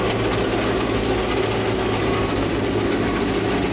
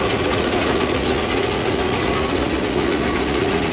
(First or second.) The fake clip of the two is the second